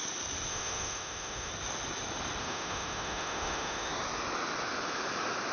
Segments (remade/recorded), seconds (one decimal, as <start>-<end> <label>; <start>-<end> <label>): 0.0-0.5 recorded; 0.5-1.5 remade; 1.5-2.4 recorded; 2.4-3.9 remade; 3.9-5.5 recorded